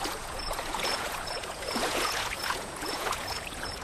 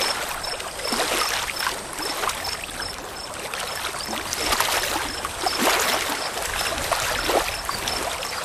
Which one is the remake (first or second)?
first